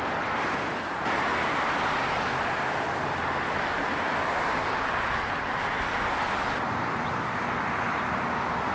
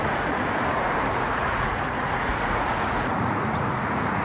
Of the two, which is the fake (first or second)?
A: second